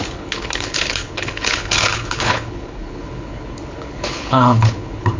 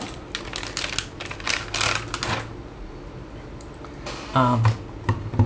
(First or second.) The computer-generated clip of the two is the first